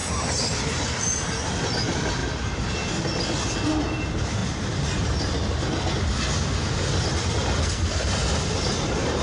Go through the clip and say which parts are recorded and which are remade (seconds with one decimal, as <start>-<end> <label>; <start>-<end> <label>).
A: 0.0-7.6 recorded; 7.6-8.1 remade; 8.1-9.2 recorded